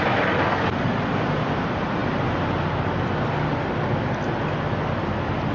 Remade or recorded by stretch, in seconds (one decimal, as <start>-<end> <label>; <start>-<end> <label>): 0.0-5.5 recorded